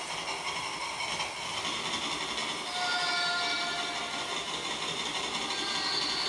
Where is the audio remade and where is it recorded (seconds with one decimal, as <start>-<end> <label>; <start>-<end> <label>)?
0.0-6.3 recorded